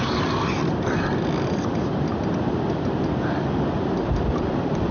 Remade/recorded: recorded